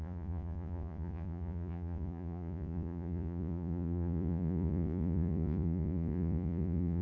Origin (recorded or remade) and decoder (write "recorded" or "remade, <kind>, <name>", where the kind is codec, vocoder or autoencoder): remade, vocoder, Vocos